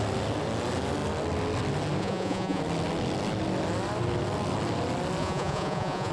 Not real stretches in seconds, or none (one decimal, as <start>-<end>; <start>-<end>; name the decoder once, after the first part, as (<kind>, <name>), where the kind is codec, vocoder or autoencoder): 2.0-2.6 (vocoder, Vocos); 5.2-6.1